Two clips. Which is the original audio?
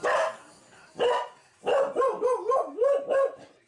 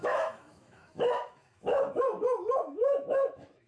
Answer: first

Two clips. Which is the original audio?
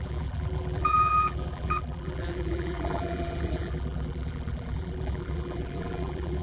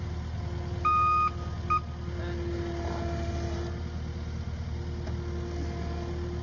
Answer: second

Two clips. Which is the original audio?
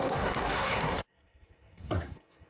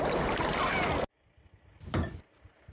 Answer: second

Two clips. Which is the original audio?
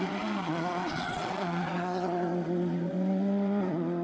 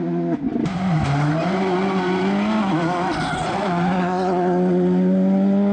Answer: second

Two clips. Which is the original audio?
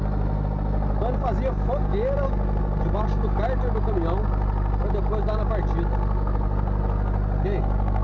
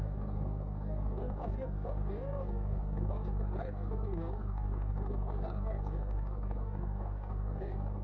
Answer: first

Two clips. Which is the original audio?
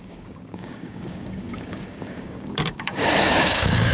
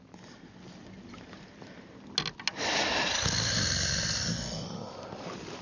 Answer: second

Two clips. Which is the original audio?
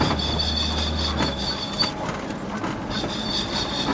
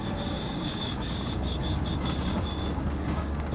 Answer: first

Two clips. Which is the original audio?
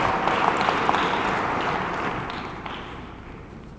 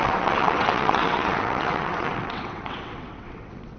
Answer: first